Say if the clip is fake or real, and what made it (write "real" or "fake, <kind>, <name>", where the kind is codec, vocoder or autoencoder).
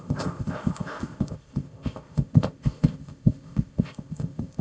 fake, codec, ZipCodec